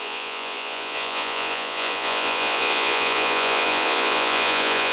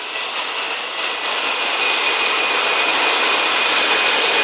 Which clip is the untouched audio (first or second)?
second